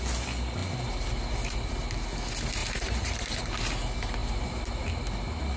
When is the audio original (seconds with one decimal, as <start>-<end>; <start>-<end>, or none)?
0.0-2.6; 3.4-4.2; 5.1-5.6